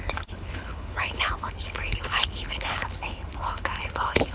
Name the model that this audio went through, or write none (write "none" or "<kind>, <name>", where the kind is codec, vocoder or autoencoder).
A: codec, HILCodec